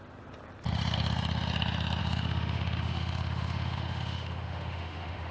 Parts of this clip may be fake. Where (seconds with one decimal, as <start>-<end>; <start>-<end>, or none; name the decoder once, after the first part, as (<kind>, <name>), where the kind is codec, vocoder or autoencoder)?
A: 2.0-5.3 (autoencoder, DAC-VAE)